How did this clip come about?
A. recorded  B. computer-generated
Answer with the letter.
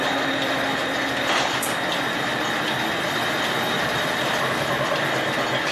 A